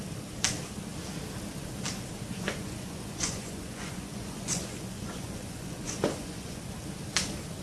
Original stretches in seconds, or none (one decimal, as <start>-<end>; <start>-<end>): 0.0-2.3; 6.6-7.6